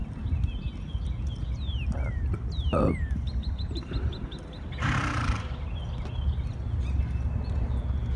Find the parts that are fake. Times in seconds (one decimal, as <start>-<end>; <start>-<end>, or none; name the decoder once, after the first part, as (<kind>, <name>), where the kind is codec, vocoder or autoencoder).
none